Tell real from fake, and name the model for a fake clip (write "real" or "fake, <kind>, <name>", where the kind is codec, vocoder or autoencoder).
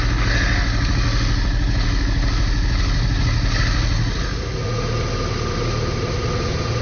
real